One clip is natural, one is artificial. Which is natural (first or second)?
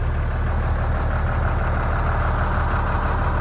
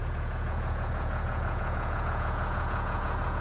first